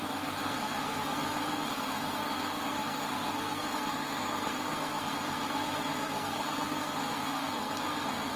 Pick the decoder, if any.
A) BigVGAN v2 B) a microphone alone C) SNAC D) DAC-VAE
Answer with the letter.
C